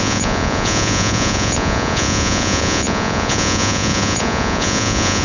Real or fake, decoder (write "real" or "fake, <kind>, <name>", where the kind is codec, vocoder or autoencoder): fake, vocoder, Vocos